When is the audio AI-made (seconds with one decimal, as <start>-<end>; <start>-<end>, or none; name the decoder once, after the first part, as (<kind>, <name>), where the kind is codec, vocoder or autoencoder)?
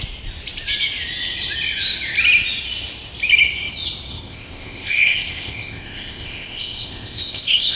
4.1-7.8 (codec, ZipCodec)